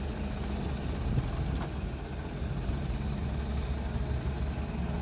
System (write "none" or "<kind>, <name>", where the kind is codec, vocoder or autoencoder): none